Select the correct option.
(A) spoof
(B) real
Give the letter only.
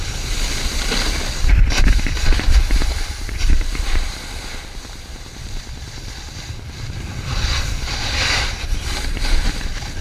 A